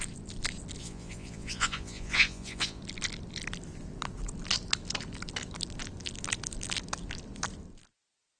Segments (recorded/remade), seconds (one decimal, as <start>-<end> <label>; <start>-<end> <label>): 0.0-0.8 recorded; 0.8-2.8 remade; 2.8-8.4 recorded